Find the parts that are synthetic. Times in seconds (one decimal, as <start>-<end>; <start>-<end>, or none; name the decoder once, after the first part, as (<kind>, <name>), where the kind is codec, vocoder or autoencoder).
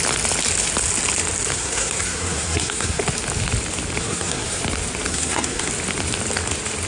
1.5-3.0 (codec, SNAC); 4.0-4.6; 5.1-5.7